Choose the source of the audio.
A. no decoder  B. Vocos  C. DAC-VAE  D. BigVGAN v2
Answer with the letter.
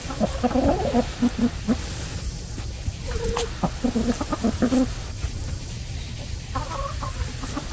A